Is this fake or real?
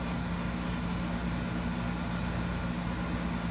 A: real